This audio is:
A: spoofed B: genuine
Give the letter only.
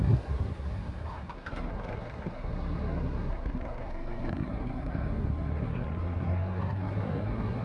A